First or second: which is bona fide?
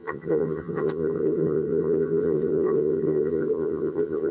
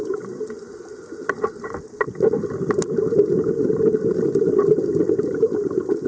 second